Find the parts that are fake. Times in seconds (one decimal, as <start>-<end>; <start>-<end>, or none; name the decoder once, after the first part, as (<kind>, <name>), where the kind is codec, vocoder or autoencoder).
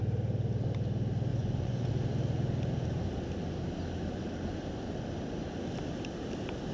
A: 1.3-1.9 (vocoder, Vocos)